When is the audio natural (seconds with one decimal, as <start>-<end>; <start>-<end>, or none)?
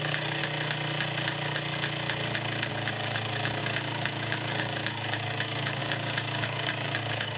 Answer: 0.4-2.7